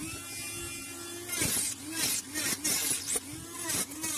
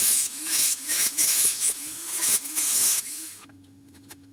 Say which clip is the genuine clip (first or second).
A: first